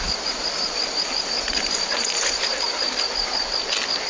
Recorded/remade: recorded